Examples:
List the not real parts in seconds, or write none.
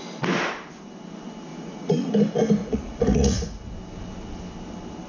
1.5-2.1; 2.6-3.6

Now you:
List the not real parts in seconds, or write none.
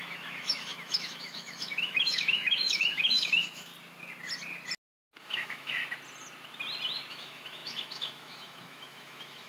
0.0-3.7; 5.2-5.8; 7.1-9.5